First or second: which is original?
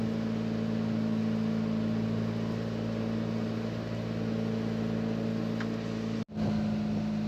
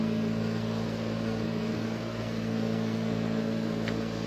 first